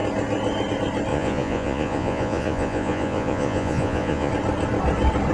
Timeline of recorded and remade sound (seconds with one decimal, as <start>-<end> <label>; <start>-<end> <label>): 0.0-1.1 recorded; 1.1-4.3 remade; 4.3-5.3 recorded